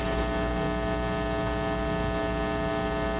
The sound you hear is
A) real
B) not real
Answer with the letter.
A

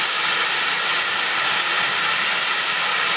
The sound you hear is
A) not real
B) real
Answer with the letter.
B